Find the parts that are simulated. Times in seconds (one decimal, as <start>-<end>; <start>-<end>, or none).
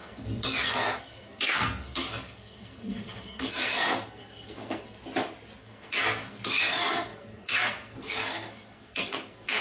0.0-5.0; 5.6-9.6